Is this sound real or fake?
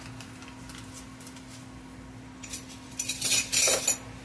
real